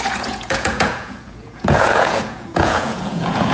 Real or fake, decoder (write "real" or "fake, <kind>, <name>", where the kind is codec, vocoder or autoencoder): fake, vocoder, Vocos